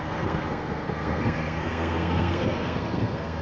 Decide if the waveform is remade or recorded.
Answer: remade